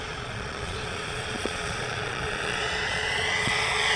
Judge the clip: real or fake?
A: fake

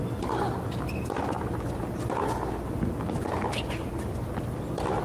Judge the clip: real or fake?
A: real